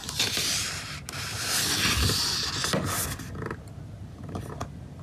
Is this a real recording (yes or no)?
yes